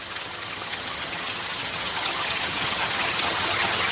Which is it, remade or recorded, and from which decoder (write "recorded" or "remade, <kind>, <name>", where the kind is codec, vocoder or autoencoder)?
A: remade, vocoder, HiFi-GAN